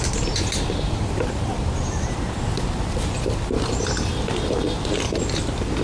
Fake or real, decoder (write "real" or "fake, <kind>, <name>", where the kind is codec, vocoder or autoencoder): real